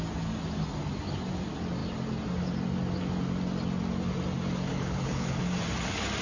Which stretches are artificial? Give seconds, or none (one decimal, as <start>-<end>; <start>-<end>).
4.7-5.4